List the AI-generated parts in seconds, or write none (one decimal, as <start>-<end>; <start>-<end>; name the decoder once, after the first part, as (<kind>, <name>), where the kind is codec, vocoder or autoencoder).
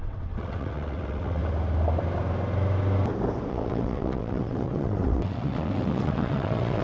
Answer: 0.0-1.4 (vocoder, WaveNeXt); 3.5-6.8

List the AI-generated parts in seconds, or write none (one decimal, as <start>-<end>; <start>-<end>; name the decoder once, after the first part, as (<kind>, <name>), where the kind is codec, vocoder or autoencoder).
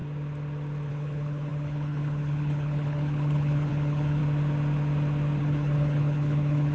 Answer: 0.9-4.2 (codec, HILCodec); 5.4-6.7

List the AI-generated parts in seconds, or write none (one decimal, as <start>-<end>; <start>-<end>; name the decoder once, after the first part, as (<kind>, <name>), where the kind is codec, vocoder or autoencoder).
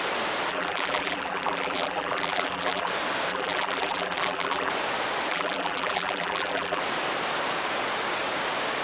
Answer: 0.5-2.9 (vocoder, BigVGAN v2); 3.3-4.7; 5.3-6.8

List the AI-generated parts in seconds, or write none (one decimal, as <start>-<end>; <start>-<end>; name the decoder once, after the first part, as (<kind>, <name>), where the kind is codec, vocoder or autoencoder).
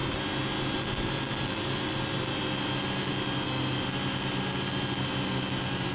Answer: none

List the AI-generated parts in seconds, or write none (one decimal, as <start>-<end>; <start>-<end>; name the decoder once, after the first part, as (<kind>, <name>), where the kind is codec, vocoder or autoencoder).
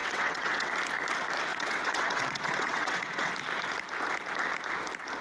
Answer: 0.0-0.7 (vocoder, WaveNeXt); 1.5-3.3